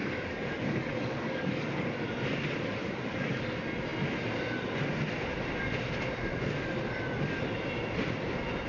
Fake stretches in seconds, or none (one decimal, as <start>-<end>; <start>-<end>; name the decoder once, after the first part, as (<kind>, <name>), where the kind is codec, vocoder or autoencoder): 0.0-2.1 (codec, DAC); 2.8-3.4